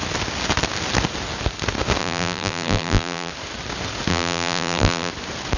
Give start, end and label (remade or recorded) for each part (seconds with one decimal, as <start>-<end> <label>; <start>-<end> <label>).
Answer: 0.0-2.0 recorded; 2.0-3.3 remade; 3.3-4.1 recorded; 4.1-5.1 remade; 5.1-5.6 recorded